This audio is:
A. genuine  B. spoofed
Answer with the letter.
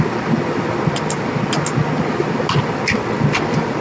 A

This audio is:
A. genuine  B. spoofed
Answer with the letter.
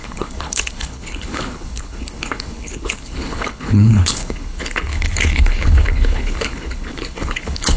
B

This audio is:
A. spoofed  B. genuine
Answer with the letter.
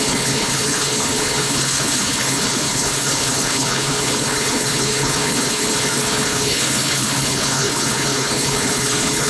A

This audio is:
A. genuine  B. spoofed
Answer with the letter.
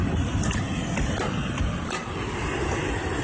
A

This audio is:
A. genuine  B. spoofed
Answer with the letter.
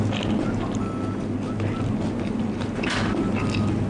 A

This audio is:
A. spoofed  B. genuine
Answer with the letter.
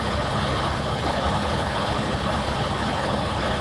A